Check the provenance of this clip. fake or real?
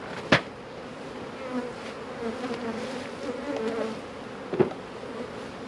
real